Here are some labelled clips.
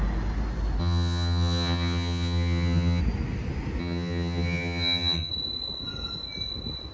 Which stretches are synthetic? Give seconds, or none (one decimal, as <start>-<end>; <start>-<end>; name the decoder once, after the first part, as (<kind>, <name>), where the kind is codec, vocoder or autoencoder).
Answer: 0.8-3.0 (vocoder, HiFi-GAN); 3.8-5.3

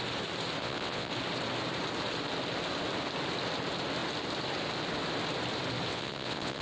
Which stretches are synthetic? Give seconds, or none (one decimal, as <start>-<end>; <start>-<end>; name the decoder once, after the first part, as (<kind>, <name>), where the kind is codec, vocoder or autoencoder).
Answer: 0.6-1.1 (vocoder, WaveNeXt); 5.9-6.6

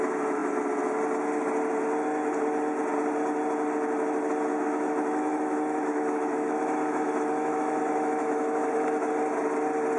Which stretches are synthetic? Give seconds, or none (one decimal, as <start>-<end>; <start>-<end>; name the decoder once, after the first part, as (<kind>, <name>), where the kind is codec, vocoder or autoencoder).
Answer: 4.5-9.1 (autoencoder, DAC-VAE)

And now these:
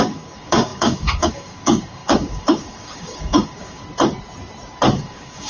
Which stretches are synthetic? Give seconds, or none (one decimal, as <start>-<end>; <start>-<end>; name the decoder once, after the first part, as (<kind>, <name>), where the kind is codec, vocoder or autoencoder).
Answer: 0.0-3.8 (codec, DAC); 4.9-5.5

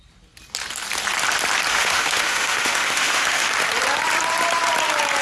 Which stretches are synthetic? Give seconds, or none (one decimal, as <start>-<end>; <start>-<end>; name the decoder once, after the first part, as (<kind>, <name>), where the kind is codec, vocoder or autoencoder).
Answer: 1.7-3.5 (autoencoder, DAC-VAE)

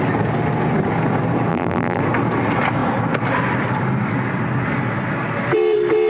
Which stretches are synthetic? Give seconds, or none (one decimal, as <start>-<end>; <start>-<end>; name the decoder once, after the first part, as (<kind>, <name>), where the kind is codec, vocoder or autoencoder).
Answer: 1.5-2.0 (vocoder, BigVGAN v2)

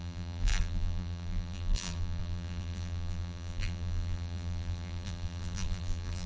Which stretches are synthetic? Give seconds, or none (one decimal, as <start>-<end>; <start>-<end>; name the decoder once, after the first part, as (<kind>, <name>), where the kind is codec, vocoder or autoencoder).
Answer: 0.0-6.3 (vocoder, BigVGAN v2)